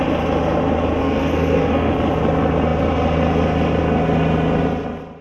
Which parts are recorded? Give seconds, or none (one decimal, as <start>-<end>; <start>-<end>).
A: 0.0-1.0; 1.9-5.2